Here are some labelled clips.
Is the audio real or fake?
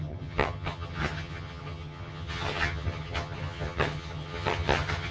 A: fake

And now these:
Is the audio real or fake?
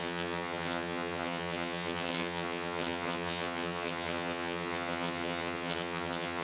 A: fake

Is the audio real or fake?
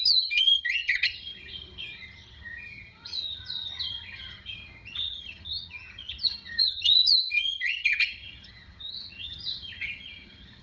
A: fake